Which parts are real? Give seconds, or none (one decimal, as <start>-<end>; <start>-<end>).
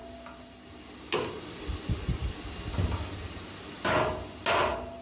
0.0-5.0